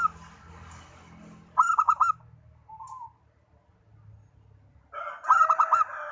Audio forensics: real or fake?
real